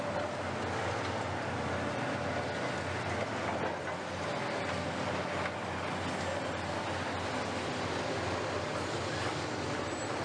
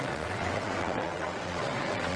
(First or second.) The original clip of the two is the first